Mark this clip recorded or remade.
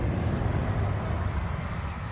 recorded